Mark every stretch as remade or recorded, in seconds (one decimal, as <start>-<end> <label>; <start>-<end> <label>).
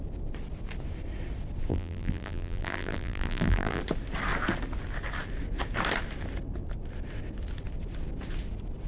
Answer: 0.0-1.7 recorded; 1.7-3.8 remade; 3.8-8.9 recorded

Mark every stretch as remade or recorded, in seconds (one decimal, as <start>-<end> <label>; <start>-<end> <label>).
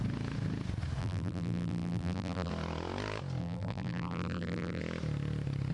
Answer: 0.0-1.0 recorded; 1.0-2.5 remade; 2.5-3.4 recorded; 3.4-4.8 remade; 4.8-5.7 recorded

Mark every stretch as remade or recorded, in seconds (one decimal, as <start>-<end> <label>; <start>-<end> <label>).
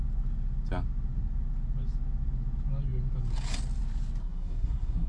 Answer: 0.0-4.2 recorded; 4.2-5.1 remade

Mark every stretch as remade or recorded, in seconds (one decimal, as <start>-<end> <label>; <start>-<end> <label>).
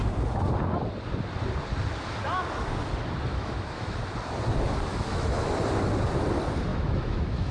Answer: 0.0-3.3 recorded; 3.3-3.9 remade; 3.9-4.9 recorded; 4.9-5.5 remade; 5.5-6.7 recorded; 6.7-7.5 remade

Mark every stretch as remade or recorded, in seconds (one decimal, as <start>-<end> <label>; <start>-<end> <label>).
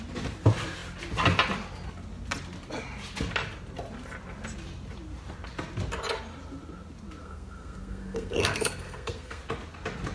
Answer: 0.0-7.2 recorded; 7.2-9.4 remade; 9.4-10.1 recorded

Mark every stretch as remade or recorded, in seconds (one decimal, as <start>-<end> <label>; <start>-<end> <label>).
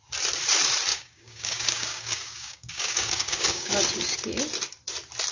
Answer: 0.0-0.9 recorded; 0.9-3.7 remade; 3.7-5.3 recorded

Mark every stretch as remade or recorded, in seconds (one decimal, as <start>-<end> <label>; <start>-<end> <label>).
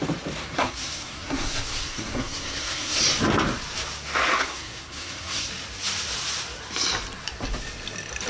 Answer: 0.0-0.4 recorded; 0.4-3.0 remade; 3.0-4.4 recorded; 4.4-5.5 remade; 5.5-8.3 recorded